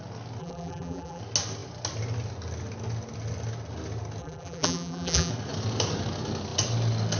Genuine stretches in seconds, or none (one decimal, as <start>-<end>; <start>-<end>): 0.0-0.4; 1.2-4.2; 5.3-7.2